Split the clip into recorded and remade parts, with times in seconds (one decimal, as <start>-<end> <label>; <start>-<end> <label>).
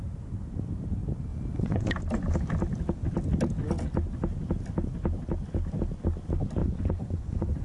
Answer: 0.0-1.3 recorded; 1.3-1.9 remade; 1.9-6.6 recorded; 6.6-7.6 remade